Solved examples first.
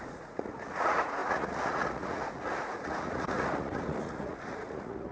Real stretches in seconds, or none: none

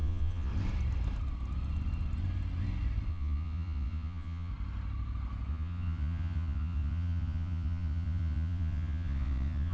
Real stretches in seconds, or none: 0.5-3.1; 4.5-5.5

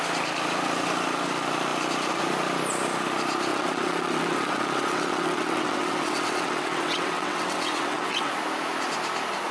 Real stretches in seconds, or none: 0.0-3.5; 8.3-9.5

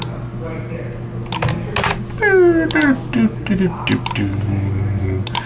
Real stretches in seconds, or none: 0.0-5.5

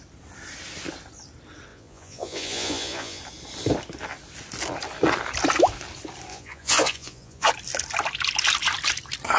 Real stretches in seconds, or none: 0.0-1.7; 3.2-6.3; 7.5-9.4

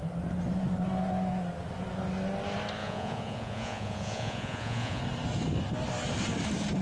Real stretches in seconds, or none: 0.0-2.8; 5.0-6.8